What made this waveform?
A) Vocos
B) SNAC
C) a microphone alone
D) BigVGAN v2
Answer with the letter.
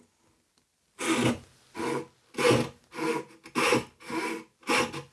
C